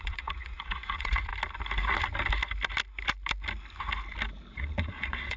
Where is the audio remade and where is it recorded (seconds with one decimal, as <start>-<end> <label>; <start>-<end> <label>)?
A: 0.0-1.3 remade; 1.3-4.5 recorded; 4.5-5.4 remade